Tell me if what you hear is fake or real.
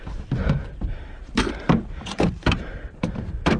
fake